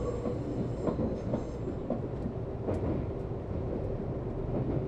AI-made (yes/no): no